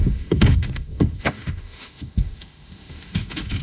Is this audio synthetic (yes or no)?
yes